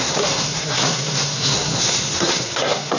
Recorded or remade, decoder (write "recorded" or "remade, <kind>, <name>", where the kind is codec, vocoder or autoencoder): remade, codec, SNAC